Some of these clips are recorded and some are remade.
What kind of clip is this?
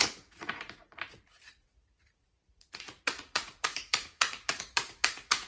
remade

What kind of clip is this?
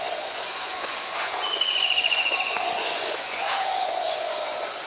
remade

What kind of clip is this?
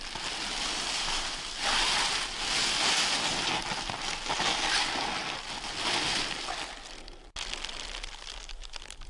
recorded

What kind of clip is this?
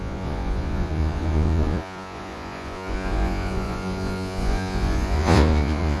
remade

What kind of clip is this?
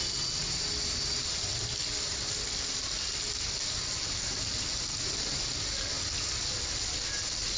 recorded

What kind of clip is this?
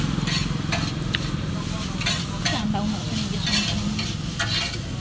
recorded